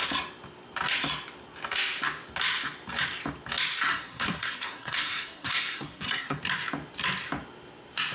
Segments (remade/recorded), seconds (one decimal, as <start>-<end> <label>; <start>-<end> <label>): 0.0-3.9 recorded; 3.9-6.4 remade; 6.4-8.1 recorded